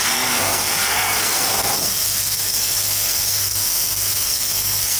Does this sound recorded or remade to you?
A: remade